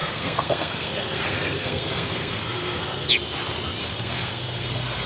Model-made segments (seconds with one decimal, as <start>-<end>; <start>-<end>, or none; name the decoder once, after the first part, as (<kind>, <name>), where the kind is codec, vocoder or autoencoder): 0.0-3.1 (codec, SNAC); 3.8-5.1